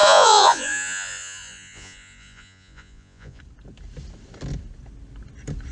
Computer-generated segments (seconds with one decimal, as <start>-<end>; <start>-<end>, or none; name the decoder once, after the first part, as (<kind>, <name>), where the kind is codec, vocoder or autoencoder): 0.0-3.4 (vocoder, Vocos)